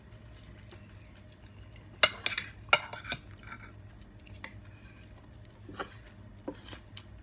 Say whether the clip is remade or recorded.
recorded